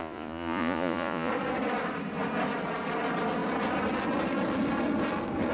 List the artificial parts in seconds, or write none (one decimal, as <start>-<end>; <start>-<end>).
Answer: 0.0-1.3